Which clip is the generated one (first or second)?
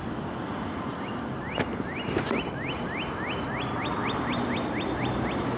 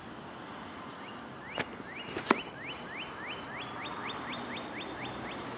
first